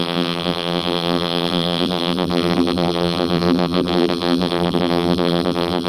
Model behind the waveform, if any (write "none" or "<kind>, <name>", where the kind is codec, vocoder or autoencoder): vocoder, BigVGAN v2